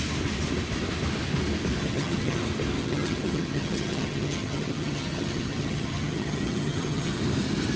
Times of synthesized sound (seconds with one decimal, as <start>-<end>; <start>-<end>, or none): 1.8-2.4; 2.8-7.2